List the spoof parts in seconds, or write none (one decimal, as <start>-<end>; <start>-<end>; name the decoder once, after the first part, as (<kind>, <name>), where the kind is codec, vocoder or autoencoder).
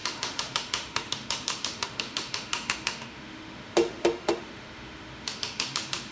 0.0-6.1 (autoencoder, DAC-VAE)